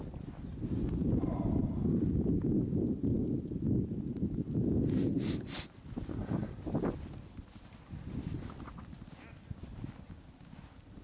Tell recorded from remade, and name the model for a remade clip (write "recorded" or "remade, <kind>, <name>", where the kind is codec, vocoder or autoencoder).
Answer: recorded